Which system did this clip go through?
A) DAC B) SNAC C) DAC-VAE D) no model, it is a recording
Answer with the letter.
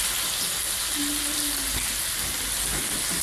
D